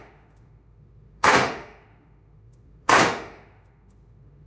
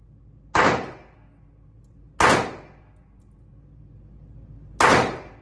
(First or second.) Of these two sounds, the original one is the second